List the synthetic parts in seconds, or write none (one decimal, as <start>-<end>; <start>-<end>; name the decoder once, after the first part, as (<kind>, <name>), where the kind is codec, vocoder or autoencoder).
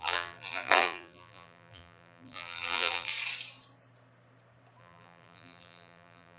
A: 0.0-3.1 (vocoder, BigVGAN v2); 4.8-6.4